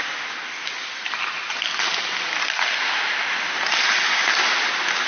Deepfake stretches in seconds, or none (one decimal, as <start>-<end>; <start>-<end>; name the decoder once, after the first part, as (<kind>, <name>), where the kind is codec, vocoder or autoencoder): none

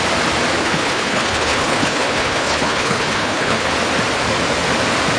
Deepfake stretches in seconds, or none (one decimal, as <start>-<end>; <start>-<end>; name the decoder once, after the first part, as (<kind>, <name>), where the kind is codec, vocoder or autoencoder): 0.6-3.7 (codec, HILCodec)

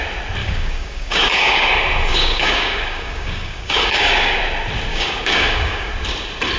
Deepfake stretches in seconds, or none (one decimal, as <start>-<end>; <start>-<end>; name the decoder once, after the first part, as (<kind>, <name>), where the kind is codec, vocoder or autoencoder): 0.4-1.7 (codec, DAC); 2.1-4.4; 4.9-5.9

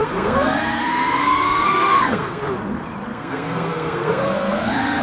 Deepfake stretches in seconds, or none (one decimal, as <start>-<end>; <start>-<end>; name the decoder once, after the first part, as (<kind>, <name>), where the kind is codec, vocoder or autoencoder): 0.0-2.4 (codec, SNAC); 3.1-5.0